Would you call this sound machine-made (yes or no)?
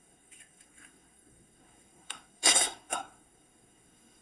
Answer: yes